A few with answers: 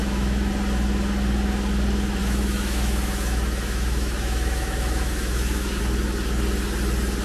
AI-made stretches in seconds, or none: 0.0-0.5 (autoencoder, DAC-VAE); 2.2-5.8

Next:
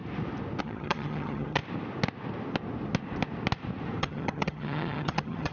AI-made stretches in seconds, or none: 0.6-1.6 (vocoder, HiFi-GAN); 4.0-5.5

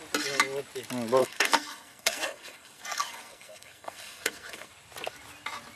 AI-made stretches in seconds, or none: 1.2-4.7 (codec, SNAC)